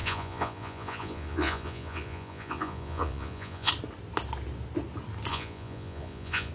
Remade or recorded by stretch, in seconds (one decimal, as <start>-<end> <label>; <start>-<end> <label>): 0.0-3.7 remade; 3.7-5.3 recorded; 5.3-6.5 remade